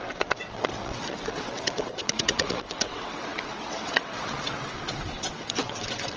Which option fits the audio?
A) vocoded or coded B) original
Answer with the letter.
A